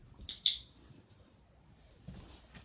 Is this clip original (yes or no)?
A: yes